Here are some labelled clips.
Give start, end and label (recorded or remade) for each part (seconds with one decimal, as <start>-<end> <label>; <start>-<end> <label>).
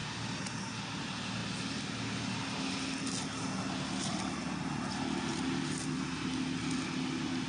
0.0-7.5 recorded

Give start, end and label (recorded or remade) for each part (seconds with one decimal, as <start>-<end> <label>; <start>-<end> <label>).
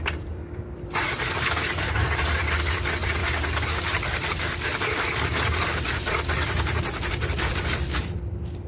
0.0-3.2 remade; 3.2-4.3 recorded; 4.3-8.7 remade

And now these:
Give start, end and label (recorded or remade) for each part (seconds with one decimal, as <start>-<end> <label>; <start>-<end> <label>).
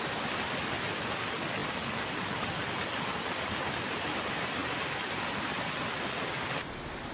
0.0-7.1 recorded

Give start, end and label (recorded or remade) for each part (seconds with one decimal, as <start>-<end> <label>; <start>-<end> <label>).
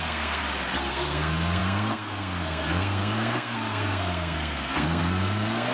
0.0-0.4 remade; 0.4-0.9 recorded; 0.9-5.7 remade